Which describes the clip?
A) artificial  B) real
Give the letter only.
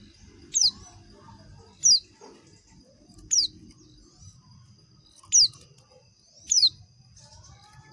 B